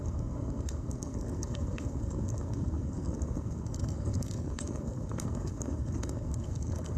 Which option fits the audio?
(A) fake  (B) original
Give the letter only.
A